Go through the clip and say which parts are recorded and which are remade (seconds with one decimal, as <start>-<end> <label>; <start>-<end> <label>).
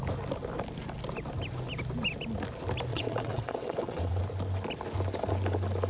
0.0-2.9 recorded; 2.9-4.2 remade; 4.2-5.9 recorded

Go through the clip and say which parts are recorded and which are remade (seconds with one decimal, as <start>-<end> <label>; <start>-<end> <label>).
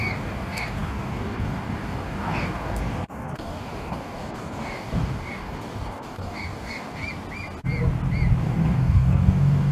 0.0-7.0 remade; 7.0-8.4 recorded; 8.4-9.7 remade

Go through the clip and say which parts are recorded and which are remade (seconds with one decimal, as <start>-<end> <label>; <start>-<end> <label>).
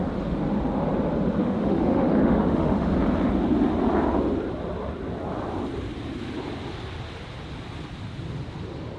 0.0-1.4 recorded; 1.4-2.9 remade; 2.9-9.0 recorded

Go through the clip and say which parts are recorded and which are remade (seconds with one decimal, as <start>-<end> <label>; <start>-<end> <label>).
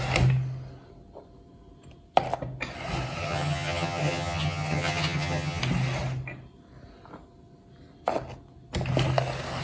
0.0-3.2 recorded; 3.2-5.6 remade; 5.6-9.6 recorded